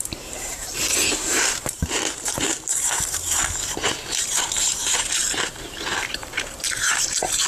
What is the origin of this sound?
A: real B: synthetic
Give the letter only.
B